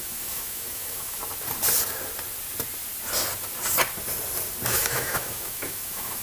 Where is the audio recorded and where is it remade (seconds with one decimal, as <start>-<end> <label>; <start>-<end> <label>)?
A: 0.0-1.2 remade; 1.2-4.7 recorded; 4.7-6.2 remade